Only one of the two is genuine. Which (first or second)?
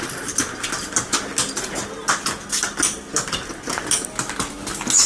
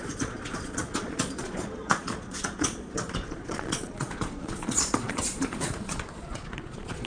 first